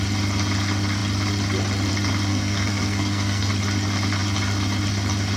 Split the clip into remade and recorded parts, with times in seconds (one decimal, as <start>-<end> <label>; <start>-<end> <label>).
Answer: 0.0-2.3 recorded; 2.3-3.5 remade; 3.5-5.4 recorded